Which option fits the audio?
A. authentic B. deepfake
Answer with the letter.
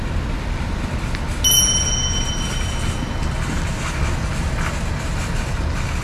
A